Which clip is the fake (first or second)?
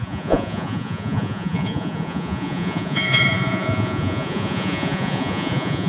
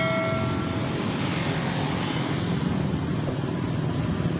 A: first